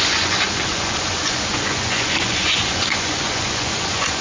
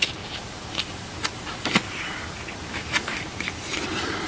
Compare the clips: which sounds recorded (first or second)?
second